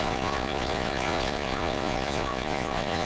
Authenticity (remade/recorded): remade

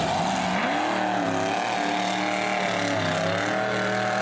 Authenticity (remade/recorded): recorded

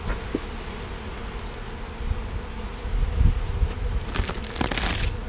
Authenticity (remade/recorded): recorded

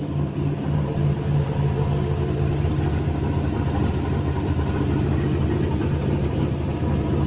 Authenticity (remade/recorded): recorded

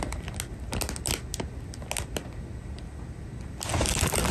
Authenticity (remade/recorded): recorded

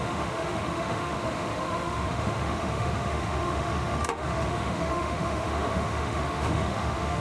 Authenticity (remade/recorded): remade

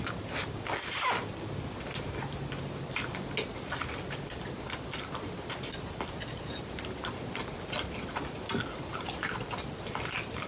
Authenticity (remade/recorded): recorded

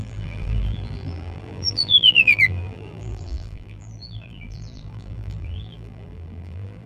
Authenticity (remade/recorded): remade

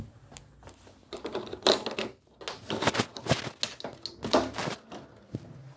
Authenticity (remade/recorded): recorded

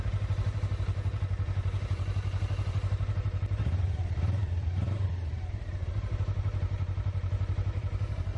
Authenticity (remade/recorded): remade